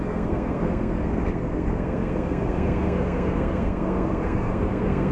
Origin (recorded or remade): remade